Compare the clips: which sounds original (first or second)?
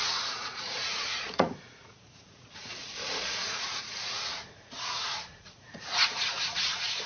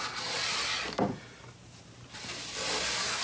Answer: second